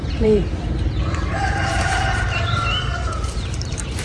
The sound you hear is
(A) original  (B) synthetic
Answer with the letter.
B